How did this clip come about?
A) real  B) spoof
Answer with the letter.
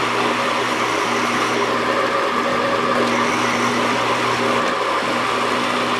A